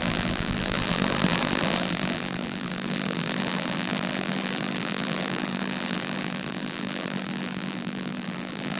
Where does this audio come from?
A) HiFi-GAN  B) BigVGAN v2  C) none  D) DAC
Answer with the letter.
B